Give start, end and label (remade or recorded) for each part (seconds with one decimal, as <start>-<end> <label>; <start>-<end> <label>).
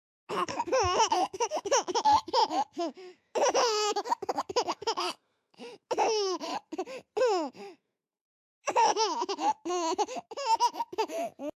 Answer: 0.0-6.5 remade; 6.5-7.2 recorded; 7.2-11.6 remade